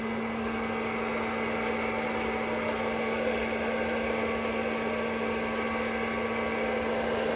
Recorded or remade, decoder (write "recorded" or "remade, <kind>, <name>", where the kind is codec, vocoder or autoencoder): recorded